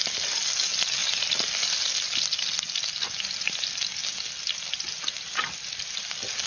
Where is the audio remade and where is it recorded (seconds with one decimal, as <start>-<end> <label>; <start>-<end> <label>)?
0.0-6.5 recorded